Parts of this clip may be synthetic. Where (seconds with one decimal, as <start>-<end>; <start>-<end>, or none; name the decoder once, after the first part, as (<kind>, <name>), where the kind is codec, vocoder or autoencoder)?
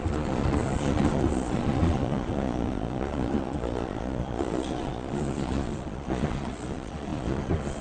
0.0-7.8 (vocoder, Vocos)